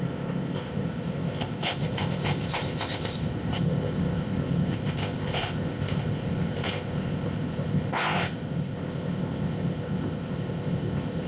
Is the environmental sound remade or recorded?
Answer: remade